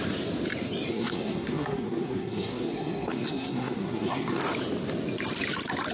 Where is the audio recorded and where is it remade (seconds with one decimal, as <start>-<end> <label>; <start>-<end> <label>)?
0.0-0.9 recorded; 0.9-4.4 remade; 4.4-5.9 recorded